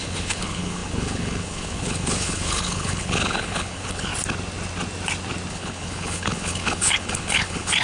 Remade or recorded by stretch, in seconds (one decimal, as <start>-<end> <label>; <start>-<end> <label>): 0.0-4.1 remade; 4.1-5.5 recorded; 5.5-7.8 remade